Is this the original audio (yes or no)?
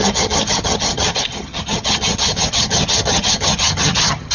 no